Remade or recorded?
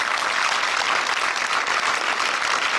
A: recorded